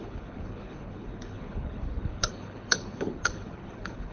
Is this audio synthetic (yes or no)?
yes